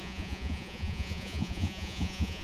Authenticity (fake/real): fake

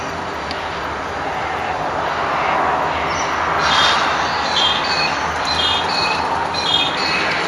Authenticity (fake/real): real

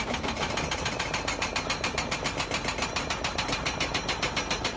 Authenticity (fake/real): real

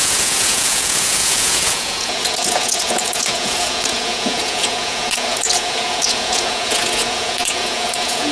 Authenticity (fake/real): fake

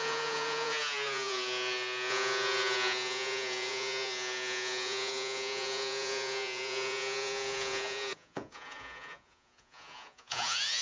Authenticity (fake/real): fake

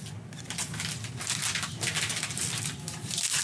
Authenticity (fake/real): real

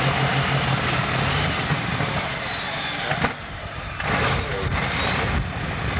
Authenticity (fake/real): real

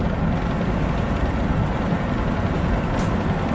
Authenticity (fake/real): real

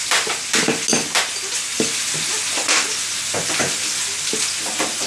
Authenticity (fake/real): real